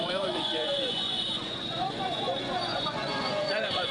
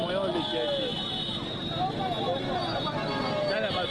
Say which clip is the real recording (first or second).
second